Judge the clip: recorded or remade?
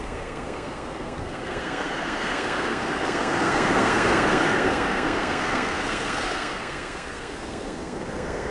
remade